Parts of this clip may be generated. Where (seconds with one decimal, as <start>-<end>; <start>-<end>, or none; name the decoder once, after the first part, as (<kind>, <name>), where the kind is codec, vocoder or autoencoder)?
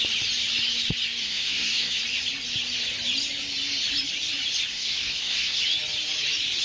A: 1.2-2.0 (codec, SNAC); 4.7-5.6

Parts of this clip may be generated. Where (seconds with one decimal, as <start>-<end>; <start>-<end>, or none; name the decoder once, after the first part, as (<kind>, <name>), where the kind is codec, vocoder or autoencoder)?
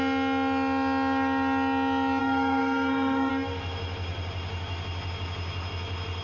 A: 2.2-3.3 (codec, SNAC)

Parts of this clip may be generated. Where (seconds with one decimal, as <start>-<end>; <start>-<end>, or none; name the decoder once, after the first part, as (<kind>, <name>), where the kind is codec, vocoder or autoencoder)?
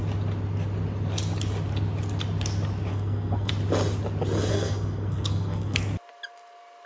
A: 2.9-3.5 (codec, SNAC); 4.5-5.8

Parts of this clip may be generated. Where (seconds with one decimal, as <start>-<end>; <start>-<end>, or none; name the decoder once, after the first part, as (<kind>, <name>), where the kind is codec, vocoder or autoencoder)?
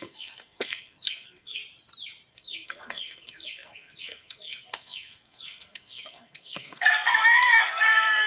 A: 0.0-1.6 (codec, SNAC); 2.3-8.3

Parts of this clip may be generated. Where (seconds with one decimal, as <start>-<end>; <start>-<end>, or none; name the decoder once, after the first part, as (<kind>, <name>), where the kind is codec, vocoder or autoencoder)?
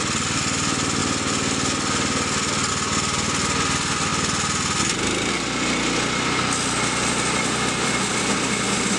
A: none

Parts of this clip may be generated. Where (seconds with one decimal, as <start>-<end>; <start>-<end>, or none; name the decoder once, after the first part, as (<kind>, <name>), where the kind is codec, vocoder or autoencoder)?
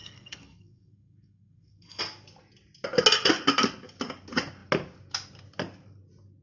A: 0.0-2.0 (codec, SNAC)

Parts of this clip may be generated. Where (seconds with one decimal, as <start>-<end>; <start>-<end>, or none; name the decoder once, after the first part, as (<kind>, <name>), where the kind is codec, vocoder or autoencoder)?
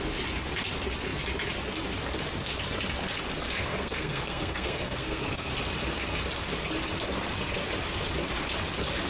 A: 3.7-5.5 (codec, SNAC)